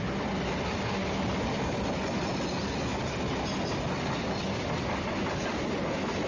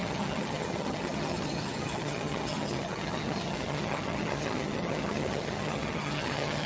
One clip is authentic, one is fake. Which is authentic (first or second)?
first